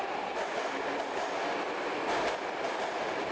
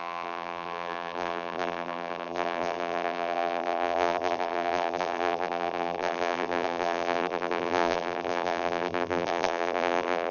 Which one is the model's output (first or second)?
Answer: second